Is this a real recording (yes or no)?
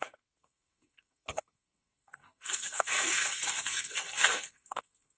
no